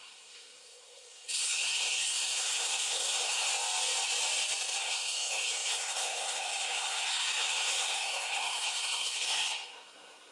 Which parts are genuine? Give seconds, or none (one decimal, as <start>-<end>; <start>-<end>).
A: 3.5-4.8